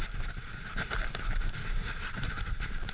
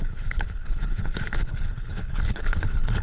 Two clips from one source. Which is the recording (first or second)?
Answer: first